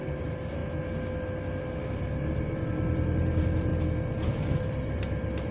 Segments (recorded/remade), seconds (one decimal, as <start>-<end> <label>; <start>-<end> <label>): 0.0-0.6 remade; 0.6-1.6 recorded; 1.6-3.7 remade; 3.7-4.4 recorded; 4.4-5.5 remade

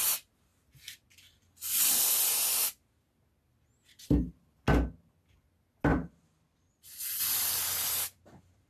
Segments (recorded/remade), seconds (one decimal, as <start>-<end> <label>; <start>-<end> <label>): 0.0-5.9 recorded; 5.9-8.7 remade

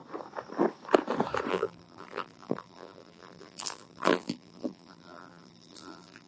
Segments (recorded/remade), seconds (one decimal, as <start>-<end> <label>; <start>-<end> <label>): 0.0-1.5 recorded; 1.5-6.3 remade

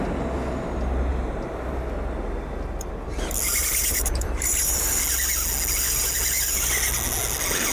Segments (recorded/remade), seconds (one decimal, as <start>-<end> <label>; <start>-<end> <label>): 0.0-1.1 recorded; 1.1-1.7 remade; 1.7-3.6 recorded; 3.6-5.0 remade; 5.0-7.7 recorded